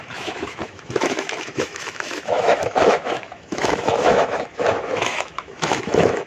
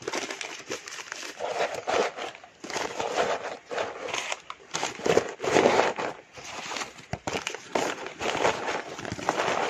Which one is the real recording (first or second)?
second